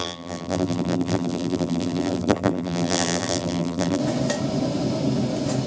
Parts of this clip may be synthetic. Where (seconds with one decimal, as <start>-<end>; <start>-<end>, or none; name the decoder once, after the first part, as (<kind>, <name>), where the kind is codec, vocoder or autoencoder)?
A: 0.0-4.0 (vocoder, BigVGAN v2)